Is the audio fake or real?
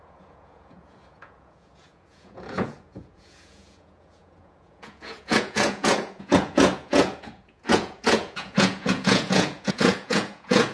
fake